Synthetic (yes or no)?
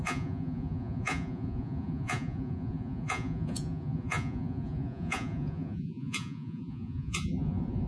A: yes